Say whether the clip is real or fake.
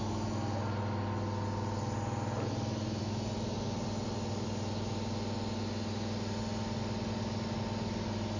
real